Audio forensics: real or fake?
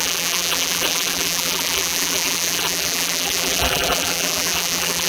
fake